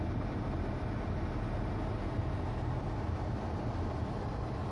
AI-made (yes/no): no